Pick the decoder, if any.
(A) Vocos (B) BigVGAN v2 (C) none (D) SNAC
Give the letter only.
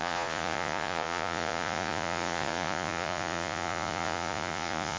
A